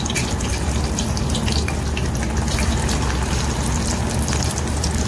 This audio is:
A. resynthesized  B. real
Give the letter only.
B